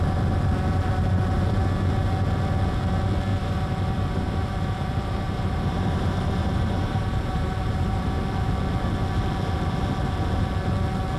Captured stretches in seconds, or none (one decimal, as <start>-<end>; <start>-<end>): 0.0-3.3; 8.2-11.2